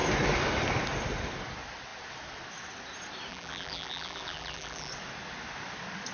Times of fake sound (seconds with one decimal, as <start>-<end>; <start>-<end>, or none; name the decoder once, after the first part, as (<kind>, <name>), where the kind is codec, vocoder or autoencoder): 3.3-4.9 (vocoder, BigVGAN v2)